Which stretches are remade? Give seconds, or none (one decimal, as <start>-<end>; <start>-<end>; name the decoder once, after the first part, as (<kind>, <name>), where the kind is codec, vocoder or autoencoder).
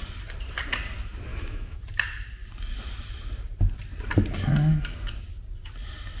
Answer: 1.3-1.8 (autoencoder, DAC-VAE)